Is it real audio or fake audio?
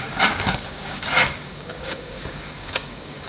fake